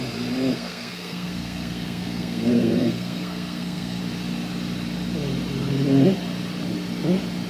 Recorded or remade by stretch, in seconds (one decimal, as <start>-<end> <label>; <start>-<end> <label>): 0.0-0.5 recorded; 0.5-4.0 remade; 4.0-7.5 recorded